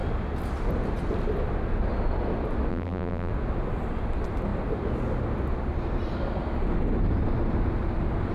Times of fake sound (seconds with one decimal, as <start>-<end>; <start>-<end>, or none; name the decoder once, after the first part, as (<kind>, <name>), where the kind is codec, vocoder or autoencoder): 2.7-3.3 (vocoder, BigVGAN v2)